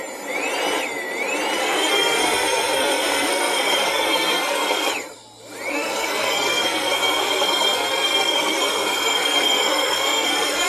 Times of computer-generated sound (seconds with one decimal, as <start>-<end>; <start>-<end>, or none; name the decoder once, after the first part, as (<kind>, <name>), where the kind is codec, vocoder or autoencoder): 1.6-4.9 (codec, SNAC); 5.7-10.7